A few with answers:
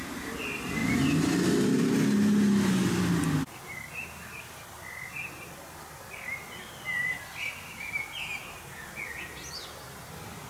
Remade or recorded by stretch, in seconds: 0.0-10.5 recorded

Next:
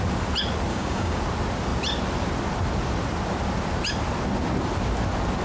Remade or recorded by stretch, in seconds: 0.0-0.7 recorded; 0.7-1.2 remade; 1.2-5.4 recorded

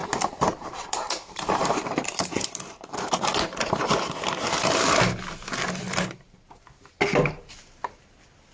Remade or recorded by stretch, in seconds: 0.0-3.1 remade; 3.1-8.5 recorded